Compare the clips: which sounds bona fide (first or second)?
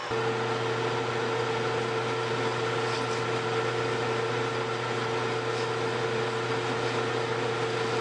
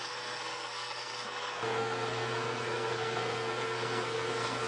first